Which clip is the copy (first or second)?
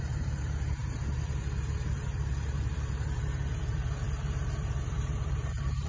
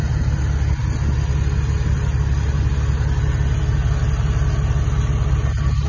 first